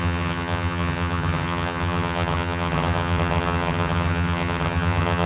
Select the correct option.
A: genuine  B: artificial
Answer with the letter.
B